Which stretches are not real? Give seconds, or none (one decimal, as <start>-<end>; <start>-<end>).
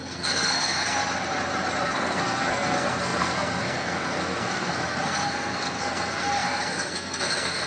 0.0-1.0; 1.8-7.7